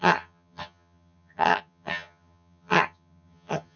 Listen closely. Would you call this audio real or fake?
fake